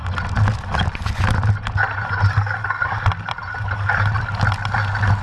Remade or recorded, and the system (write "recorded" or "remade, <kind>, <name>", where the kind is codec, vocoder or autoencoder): recorded